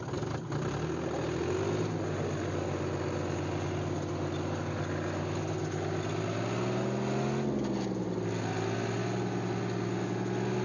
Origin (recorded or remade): recorded